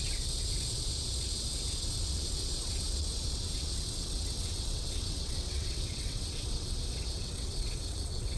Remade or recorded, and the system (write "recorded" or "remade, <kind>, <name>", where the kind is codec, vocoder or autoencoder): remade, vocoder, WaveNeXt